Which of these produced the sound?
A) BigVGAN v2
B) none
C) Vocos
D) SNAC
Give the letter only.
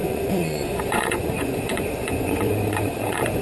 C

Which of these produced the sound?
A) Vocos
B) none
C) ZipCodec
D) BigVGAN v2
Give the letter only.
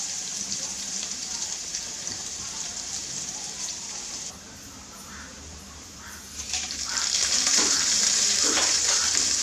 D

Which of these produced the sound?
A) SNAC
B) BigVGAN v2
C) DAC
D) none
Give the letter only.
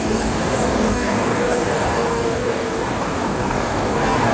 C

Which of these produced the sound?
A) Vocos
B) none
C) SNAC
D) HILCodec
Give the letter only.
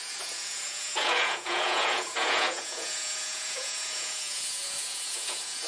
A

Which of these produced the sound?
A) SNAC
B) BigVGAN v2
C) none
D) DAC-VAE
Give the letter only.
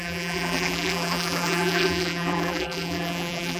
B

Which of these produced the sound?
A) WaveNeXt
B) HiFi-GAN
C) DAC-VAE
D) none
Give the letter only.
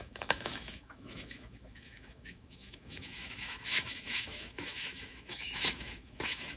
C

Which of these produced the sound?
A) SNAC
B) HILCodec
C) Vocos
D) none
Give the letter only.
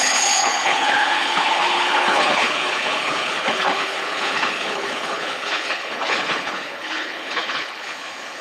B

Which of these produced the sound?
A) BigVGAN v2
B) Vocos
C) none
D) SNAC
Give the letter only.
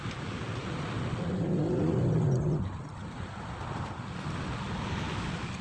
C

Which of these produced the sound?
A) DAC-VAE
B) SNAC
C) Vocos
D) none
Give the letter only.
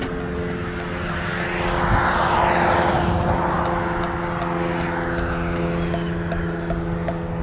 D